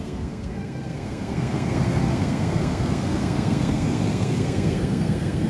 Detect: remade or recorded remade